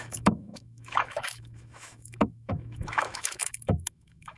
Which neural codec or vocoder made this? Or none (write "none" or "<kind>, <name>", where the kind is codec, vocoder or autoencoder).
autoencoder, DAC-VAE